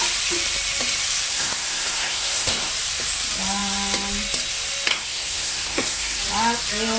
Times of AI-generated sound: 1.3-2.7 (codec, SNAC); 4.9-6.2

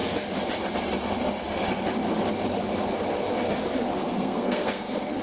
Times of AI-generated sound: 4.0-5.2 (codec, SNAC)

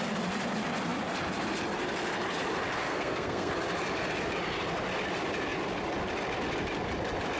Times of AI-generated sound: 2.8-3.5 (codec, SNAC)

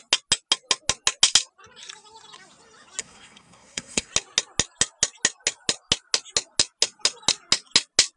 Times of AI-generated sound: 3.0-4.1 (codec, SNAC)

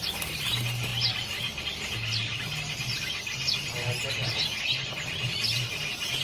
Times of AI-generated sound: none

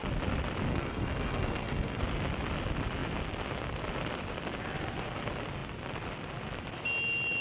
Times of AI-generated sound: 0.7-2.0 (codec, SNAC)